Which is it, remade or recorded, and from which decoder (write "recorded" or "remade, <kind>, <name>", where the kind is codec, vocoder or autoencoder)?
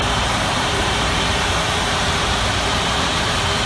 remade, vocoder, BigVGAN v2